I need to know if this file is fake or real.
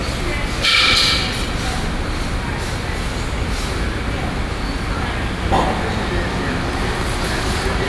real